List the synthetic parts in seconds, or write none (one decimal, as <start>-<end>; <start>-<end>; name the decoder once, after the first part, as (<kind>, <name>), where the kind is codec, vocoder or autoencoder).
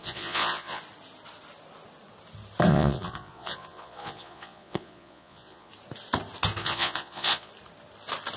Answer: 0.0-0.8 (vocoder, Vocos); 2.7-5.7; 6.6-7.5